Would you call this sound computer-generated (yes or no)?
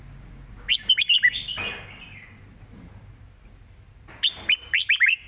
no